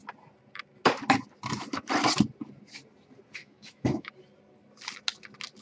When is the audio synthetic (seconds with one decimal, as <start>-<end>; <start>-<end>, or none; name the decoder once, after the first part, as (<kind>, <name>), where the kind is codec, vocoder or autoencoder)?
3.4-4.1 (autoencoder, DAC-VAE)